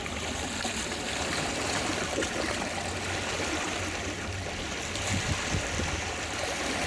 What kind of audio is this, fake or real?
real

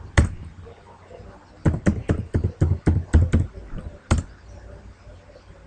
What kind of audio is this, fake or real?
real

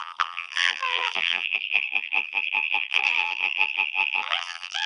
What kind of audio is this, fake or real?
fake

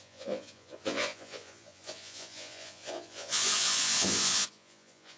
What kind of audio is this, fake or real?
fake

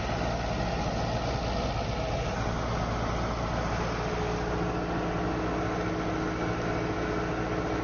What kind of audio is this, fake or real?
real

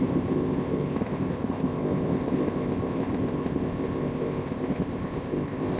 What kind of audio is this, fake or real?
fake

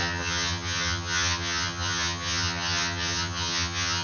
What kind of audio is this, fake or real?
fake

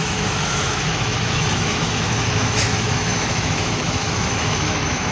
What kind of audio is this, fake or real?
fake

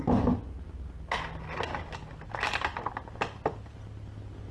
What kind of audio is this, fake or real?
real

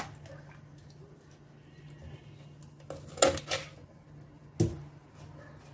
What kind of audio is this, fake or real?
real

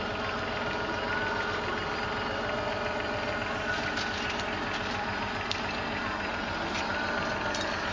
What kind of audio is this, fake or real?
real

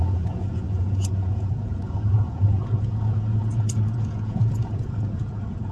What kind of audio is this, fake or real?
fake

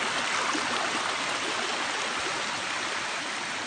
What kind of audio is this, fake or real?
real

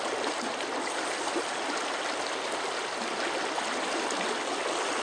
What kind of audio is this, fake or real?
real